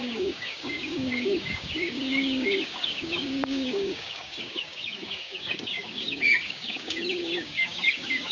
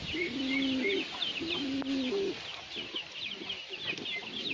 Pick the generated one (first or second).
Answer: first